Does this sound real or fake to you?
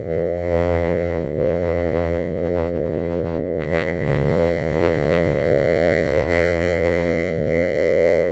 fake